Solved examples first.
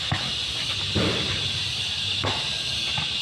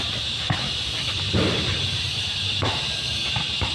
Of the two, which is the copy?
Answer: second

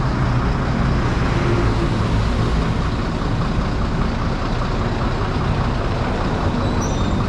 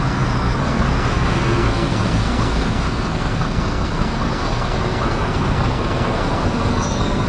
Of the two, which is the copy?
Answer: second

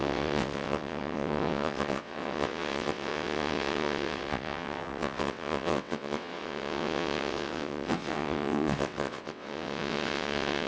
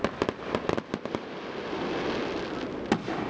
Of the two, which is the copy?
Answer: first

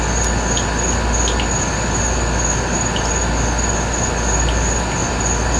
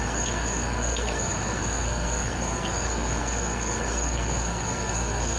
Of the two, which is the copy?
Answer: second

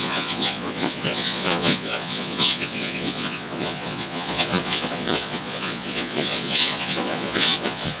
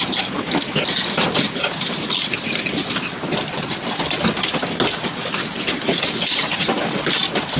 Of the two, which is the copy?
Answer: first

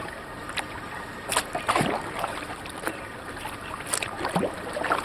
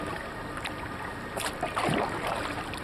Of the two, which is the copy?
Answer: first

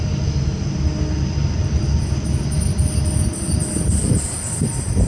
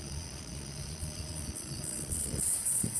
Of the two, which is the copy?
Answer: second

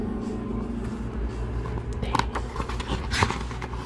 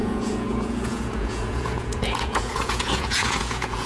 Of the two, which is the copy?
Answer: second